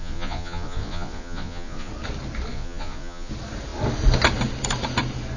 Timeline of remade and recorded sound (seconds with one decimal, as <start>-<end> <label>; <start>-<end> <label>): 0.0-1.9 remade; 1.9-2.5 recorded; 2.5-3.3 remade; 3.3-5.4 recorded